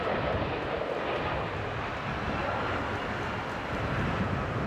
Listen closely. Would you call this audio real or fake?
real